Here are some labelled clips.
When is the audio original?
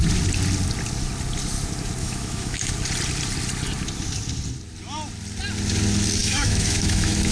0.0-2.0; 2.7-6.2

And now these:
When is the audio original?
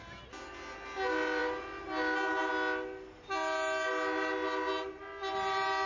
0.0-5.9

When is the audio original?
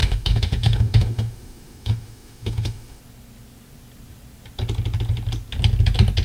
3.0-6.2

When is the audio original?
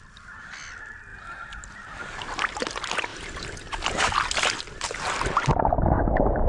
0.0-6.5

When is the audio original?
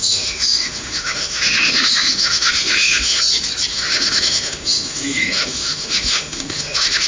3.2-3.7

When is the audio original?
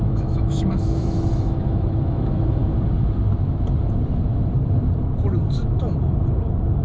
2.6-6.8